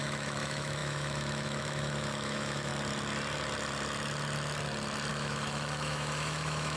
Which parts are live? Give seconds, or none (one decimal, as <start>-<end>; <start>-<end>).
2.7-5.1